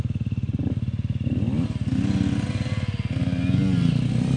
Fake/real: real